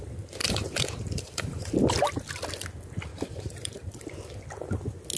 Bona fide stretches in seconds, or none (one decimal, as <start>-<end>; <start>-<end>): 0.0-0.4; 1.7-3.1; 3.9-5.2